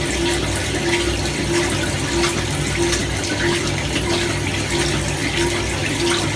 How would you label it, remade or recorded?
recorded